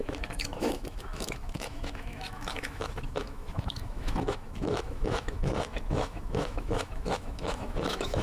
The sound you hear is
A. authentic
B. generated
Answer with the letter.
B